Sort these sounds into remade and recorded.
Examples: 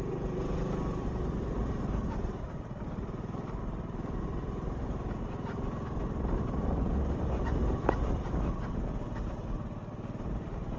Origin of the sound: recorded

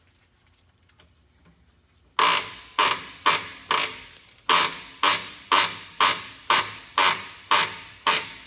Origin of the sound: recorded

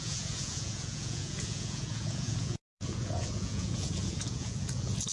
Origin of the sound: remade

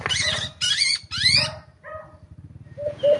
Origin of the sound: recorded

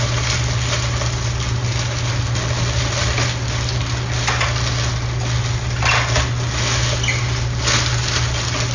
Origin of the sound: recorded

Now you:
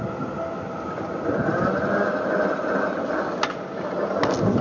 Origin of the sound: recorded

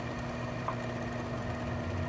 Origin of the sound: recorded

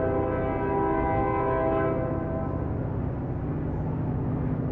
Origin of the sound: recorded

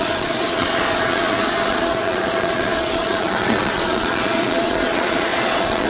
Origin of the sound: remade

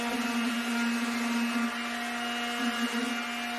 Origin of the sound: recorded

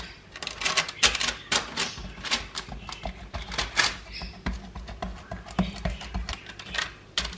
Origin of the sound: recorded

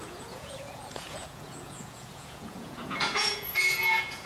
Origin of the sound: remade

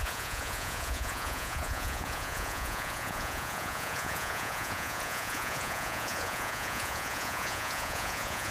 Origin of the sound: remade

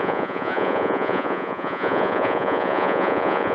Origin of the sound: remade